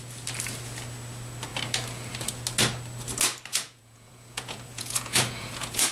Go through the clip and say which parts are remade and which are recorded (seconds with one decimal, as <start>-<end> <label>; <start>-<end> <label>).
0.0-3.5 recorded; 3.5-5.9 remade